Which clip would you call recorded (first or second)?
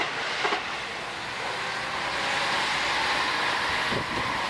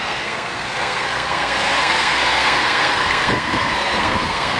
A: first